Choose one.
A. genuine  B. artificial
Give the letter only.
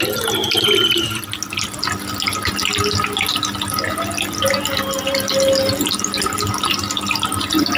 A